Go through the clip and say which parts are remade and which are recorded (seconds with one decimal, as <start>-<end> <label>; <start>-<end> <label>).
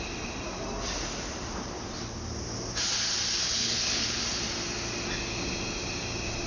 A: 0.0-3.4 recorded; 3.4-4.2 remade; 4.2-6.5 recorded